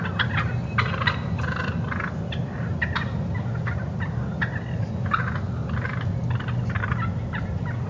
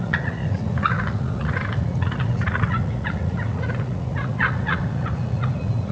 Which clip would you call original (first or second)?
first